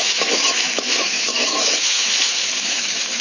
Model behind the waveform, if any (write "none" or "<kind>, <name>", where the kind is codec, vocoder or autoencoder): autoencoder, DAC-VAE